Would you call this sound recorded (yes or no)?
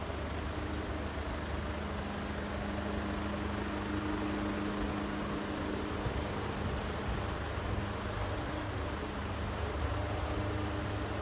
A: yes